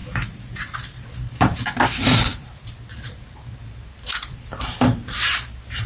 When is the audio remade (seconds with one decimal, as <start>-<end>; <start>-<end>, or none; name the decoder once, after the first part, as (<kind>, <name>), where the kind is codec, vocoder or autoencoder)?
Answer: 0.5-5.9 (vocoder, BigVGAN v2)